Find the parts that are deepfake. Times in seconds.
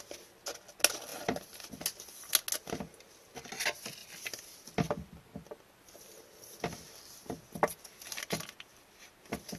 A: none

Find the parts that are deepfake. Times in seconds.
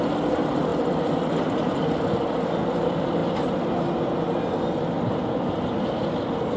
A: none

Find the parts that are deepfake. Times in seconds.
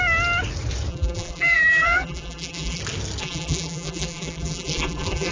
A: 0.9-2.8 (vocoder, BigVGAN v2); 3.2-5.3